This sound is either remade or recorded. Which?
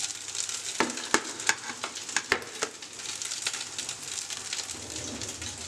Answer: recorded